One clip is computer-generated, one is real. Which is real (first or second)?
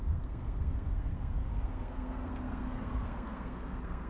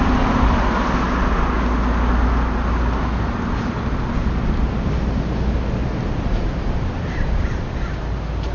second